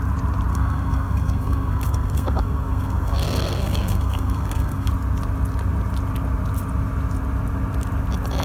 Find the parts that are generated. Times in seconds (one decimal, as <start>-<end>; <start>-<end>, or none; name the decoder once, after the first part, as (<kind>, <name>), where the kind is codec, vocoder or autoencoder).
0.5-4.9 (codec, SNAC)